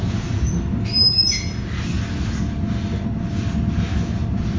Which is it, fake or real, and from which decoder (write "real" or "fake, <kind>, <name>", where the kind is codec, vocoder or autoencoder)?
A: real